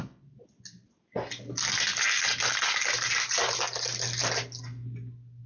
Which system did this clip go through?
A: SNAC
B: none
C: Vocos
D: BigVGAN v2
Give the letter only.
B